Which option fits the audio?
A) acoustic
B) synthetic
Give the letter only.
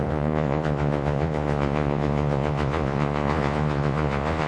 B